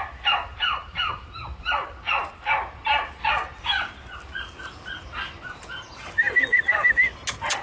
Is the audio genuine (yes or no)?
yes